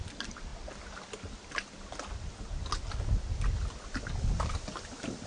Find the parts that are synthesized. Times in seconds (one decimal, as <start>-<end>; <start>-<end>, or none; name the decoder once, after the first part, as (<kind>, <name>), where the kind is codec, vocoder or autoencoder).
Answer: none